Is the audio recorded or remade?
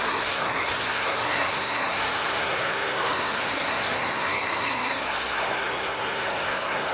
remade